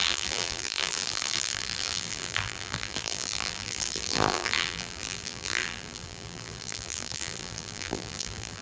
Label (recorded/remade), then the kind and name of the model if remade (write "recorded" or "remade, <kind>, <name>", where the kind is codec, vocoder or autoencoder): remade, vocoder, BigVGAN v2